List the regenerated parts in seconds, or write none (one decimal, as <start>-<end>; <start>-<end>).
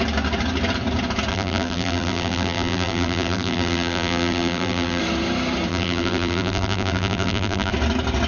1.3-5.0; 5.7-7.7